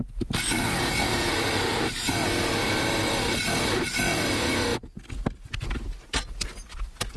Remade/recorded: recorded